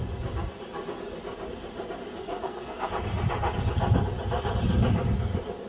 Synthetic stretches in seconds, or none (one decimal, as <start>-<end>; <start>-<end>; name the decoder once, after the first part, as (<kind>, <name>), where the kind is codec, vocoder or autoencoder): 2.2-2.9 (codec, SNAC)